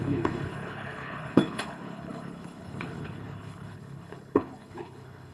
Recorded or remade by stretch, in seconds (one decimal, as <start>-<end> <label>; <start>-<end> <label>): 0.0-5.3 remade